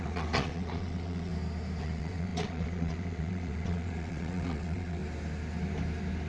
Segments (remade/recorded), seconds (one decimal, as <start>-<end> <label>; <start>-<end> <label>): 0.0-1.3 remade; 1.3-1.8 recorded; 1.8-5.0 remade; 5.0-6.3 recorded